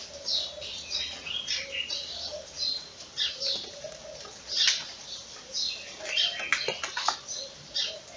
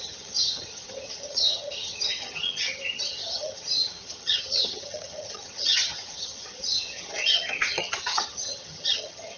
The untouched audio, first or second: first